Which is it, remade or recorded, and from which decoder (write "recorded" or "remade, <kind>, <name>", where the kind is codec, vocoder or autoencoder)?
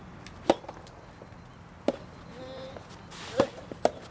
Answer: recorded